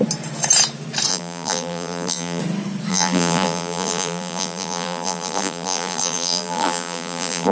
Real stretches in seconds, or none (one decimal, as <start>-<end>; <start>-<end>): 0.0-1.1; 2.4-2.9